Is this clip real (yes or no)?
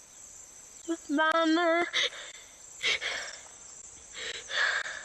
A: yes